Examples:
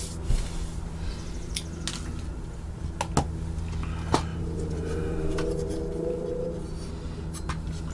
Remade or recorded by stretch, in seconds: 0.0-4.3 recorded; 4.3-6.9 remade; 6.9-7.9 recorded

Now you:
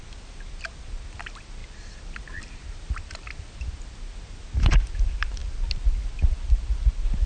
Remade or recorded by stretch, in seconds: 0.0-7.3 recorded

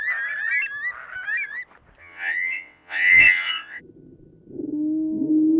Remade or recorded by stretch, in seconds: 0.0-2.0 recorded; 2.0-3.8 remade; 3.8-5.6 recorded